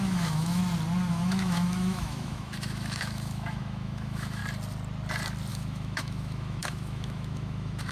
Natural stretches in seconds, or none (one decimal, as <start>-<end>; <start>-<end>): 0.6-1.1; 4.4-5.5